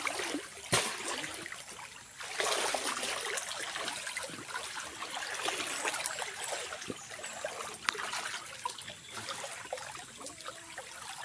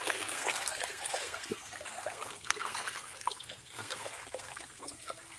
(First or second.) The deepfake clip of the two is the second